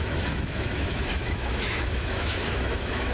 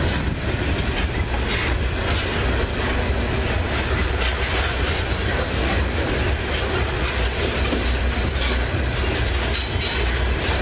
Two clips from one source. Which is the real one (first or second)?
second